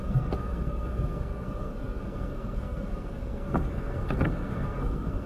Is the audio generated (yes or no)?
yes